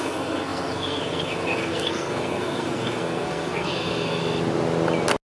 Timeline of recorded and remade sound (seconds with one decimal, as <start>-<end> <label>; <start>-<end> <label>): 0.0-4.2 remade; 4.2-5.3 recorded

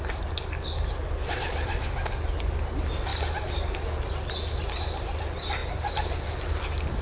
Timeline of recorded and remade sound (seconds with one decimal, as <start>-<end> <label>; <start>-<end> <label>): 0.0-7.0 recorded

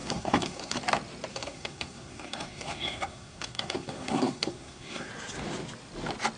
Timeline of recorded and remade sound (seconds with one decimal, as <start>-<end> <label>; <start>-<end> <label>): 0.0-0.8 remade; 0.8-1.3 recorded; 1.3-5.1 remade; 5.1-6.4 recorded

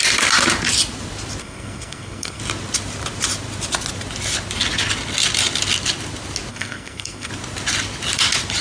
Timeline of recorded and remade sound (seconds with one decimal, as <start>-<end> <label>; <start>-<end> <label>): 0.0-1.4 recorded; 1.4-2.4 remade; 2.4-6.5 recorded; 6.5-7.3 remade; 7.3-8.6 recorded

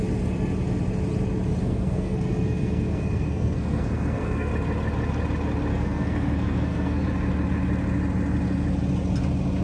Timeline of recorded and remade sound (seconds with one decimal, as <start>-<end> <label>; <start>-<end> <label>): 0.0-1.6 recorded; 1.6-4.5 remade; 4.5-5.7 recorded; 5.7-7.0 remade; 7.0-9.6 recorded

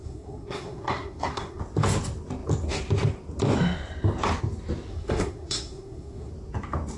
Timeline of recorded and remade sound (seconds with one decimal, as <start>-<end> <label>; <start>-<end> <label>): 0.0-1.6 remade; 1.6-4.9 recorded; 4.9-6.3 remade; 6.3-7.0 recorded

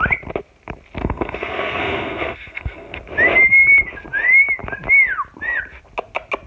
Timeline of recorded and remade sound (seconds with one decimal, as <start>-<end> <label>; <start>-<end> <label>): 0.0-1.0 recorded; 1.0-3.0 remade; 3.0-6.5 recorded

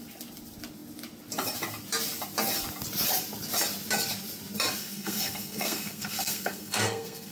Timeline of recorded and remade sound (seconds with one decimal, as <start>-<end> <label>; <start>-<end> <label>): 0.0-4.8 recorded; 4.8-7.3 remade